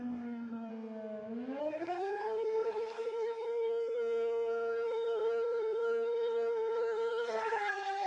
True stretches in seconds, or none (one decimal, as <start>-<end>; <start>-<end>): 0.7-1.6